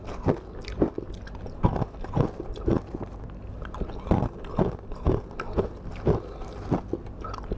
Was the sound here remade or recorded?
recorded